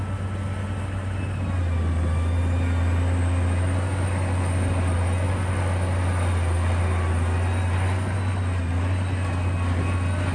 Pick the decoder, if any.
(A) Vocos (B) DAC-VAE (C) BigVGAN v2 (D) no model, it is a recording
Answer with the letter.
D